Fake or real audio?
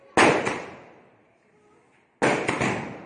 real